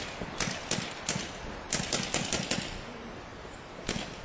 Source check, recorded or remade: recorded